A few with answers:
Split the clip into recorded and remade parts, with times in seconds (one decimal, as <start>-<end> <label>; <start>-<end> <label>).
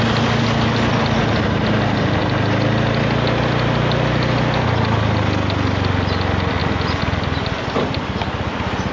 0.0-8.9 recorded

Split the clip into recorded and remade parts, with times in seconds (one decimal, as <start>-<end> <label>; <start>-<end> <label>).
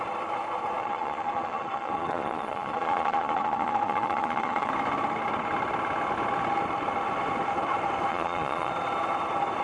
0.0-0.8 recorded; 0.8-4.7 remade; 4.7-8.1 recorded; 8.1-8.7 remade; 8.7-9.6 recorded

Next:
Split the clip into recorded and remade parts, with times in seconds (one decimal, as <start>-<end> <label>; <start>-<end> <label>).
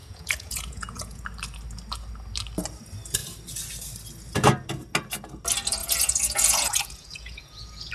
0.0-1.2 remade; 1.2-5.8 recorded; 5.8-7.9 remade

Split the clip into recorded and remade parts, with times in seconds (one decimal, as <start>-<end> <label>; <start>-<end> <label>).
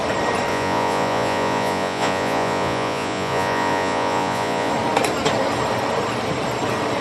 0.0-0.5 recorded; 0.5-4.7 remade; 4.7-7.0 recorded